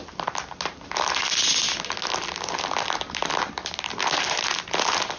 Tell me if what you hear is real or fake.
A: real